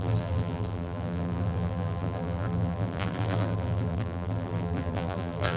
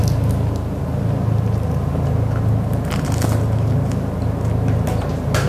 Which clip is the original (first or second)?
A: second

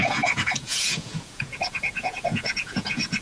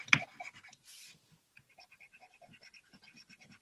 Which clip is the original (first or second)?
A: second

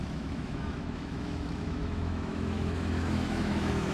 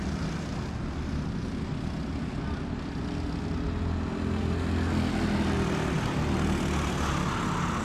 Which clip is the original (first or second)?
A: second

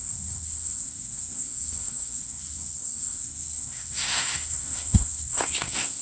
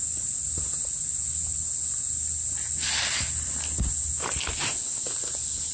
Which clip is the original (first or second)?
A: second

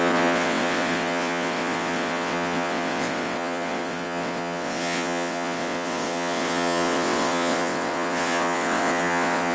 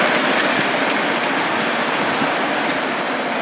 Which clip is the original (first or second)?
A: second